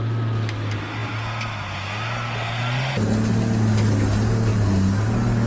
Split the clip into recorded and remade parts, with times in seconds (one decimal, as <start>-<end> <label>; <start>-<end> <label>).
0.0-5.5 recorded